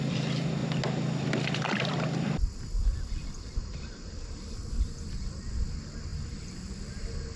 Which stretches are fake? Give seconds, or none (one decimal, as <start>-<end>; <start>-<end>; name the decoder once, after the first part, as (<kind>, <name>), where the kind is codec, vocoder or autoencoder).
0.0-0.6 (vocoder, BigVGAN v2); 1.2-7.4